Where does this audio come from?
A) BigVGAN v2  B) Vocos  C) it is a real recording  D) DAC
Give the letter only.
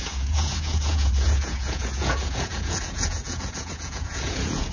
B